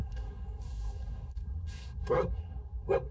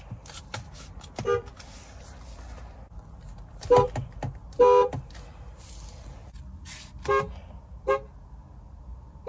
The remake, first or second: first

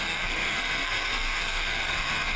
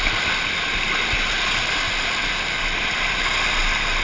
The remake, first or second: first